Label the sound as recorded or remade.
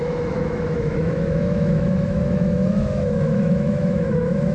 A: remade